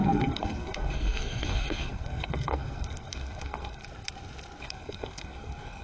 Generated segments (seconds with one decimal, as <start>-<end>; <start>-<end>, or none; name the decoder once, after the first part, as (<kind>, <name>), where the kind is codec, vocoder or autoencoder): 0.0-3.8 (codec, SNAC); 4.6-5.8